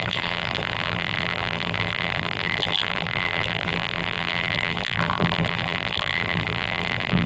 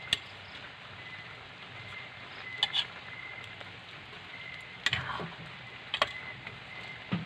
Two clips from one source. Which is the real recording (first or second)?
second